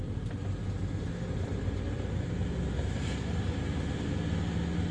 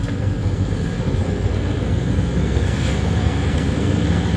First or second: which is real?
first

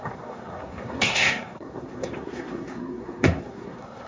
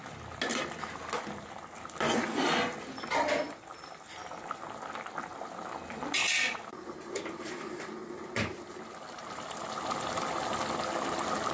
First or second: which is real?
second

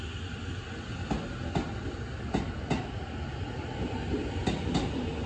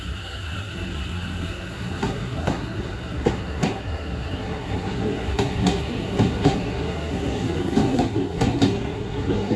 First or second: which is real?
first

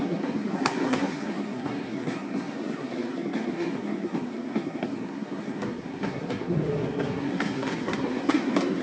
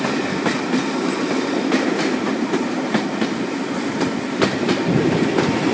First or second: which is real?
second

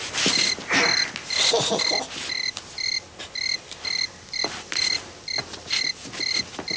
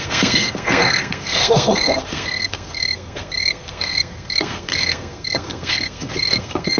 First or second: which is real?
first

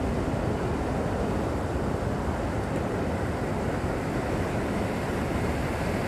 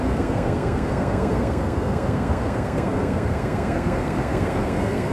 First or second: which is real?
first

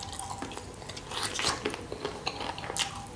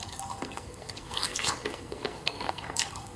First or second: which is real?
first